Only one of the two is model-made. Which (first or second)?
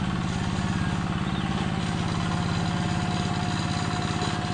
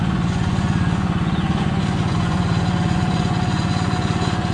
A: second